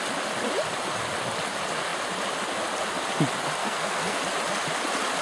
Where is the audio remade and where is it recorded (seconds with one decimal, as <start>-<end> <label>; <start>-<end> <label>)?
0.0-3.6 recorded; 3.6-4.2 remade; 4.2-5.2 recorded